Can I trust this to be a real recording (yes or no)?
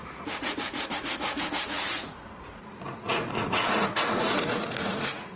no